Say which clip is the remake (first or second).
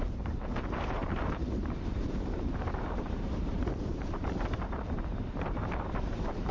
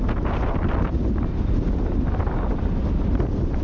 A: first